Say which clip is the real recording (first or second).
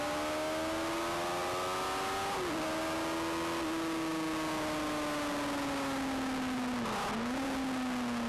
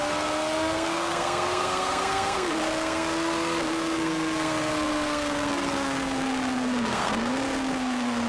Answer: first